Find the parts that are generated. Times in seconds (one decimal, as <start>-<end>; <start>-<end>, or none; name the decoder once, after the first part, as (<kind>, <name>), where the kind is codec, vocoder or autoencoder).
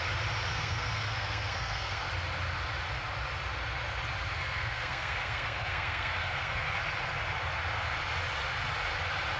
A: 0.5-2.1 (codec, SNAC); 4.3-6.7